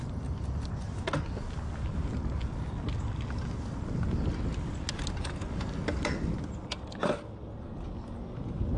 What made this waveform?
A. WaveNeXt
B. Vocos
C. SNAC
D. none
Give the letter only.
D